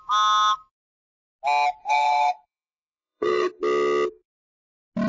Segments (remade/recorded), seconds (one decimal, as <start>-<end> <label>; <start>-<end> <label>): 0.0-1.8 recorded; 1.8-3.6 remade; 3.6-5.1 recorded